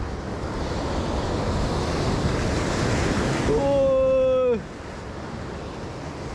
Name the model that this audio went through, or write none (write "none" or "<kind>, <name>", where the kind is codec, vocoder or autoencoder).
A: none